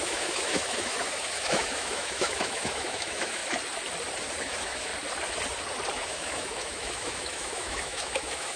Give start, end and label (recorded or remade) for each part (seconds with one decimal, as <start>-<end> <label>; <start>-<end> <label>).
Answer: 0.0-3.4 remade; 3.4-4.4 recorded; 4.4-4.9 remade; 4.9-5.9 recorded; 5.9-8.6 remade